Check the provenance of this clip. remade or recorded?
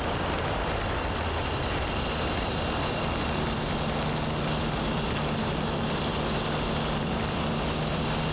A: recorded